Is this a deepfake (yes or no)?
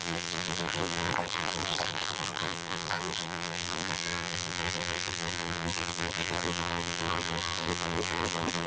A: yes